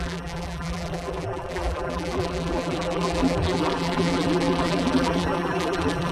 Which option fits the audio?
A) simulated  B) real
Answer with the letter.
A